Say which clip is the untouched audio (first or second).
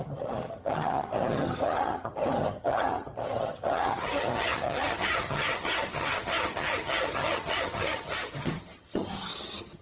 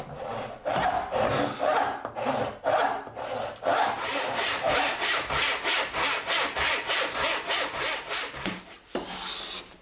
second